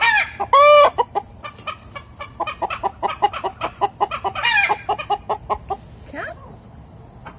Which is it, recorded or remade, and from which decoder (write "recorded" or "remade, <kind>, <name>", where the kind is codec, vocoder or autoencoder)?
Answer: recorded